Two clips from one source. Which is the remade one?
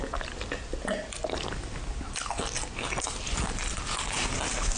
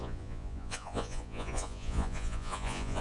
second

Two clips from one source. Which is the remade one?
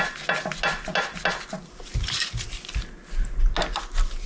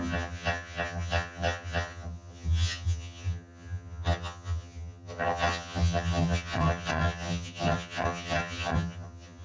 second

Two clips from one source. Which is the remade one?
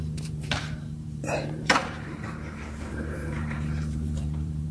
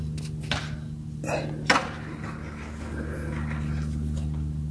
first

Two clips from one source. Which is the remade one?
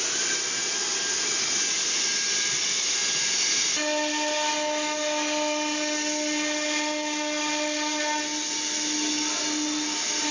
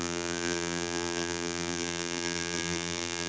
second